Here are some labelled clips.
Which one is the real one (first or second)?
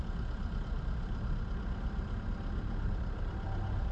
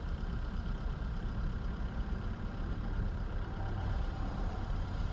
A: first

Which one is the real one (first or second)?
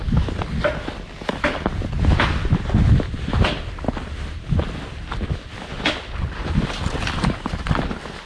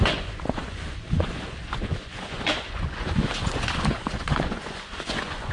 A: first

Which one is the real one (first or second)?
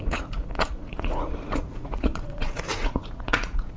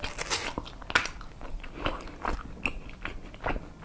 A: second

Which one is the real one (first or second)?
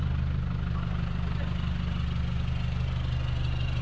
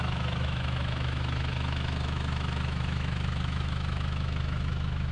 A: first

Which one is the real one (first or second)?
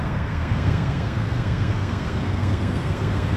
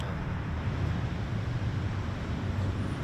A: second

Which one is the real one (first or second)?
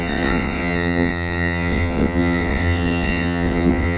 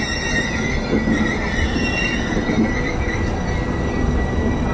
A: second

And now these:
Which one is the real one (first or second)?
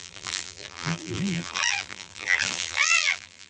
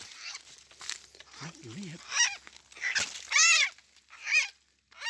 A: second